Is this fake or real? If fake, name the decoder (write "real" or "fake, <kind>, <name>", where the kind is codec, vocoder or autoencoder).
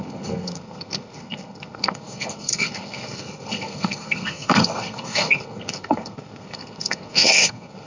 fake, codec, SNAC